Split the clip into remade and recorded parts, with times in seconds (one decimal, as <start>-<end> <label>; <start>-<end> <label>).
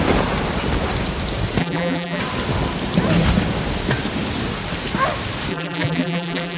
0.0-1.6 recorded; 1.6-2.2 remade; 2.2-5.5 recorded; 5.5-6.6 remade